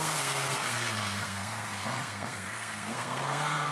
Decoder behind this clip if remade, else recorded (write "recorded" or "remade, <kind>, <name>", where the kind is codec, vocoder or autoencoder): remade, codec, SNAC